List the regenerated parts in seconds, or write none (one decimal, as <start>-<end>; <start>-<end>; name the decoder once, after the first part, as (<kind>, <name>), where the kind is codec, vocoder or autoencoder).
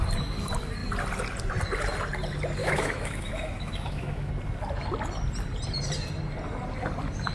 2.6-4.3 (autoencoder, DAC-VAE)